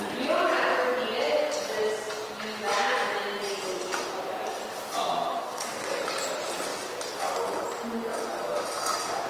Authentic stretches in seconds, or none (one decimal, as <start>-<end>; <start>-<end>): 0.0-5.3; 6.0-9.3